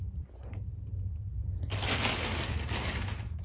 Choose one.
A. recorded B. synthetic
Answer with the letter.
A